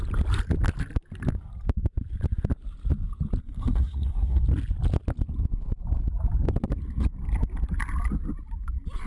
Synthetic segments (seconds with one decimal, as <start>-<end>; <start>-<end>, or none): 3.4-4.4